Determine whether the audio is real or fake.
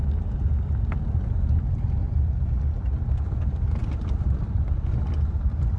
real